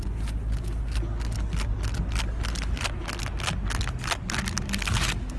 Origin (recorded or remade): recorded